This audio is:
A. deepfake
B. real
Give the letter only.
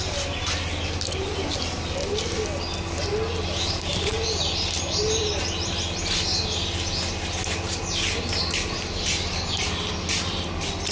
B